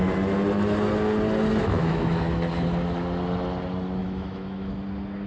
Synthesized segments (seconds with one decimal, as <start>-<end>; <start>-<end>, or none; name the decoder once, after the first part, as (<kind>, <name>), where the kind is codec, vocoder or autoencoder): 1.6-2.1 (autoencoder, DAC-VAE); 4.0-4.7